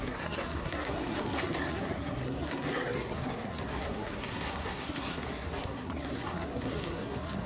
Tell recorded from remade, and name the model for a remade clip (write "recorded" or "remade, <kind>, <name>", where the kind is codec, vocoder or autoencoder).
remade, codec, SNAC